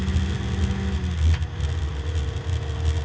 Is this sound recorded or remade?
recorded